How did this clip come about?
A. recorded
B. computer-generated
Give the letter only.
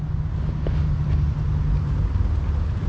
A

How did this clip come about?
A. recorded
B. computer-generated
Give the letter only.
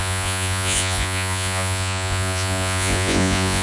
B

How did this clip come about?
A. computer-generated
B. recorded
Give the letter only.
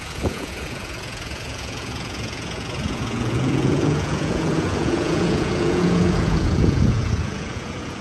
A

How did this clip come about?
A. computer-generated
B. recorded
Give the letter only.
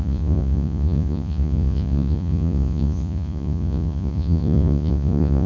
A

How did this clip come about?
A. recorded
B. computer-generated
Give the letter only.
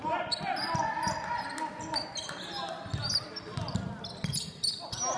A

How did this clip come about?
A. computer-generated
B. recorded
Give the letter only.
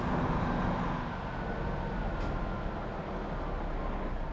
B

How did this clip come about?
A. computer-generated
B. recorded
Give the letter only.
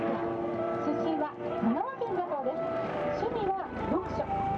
B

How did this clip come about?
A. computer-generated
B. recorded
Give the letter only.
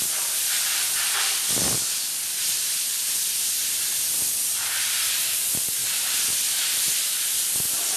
A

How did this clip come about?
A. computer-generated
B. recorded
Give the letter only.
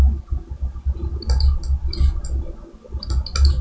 B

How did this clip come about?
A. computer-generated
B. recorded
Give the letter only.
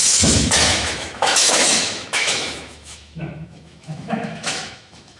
A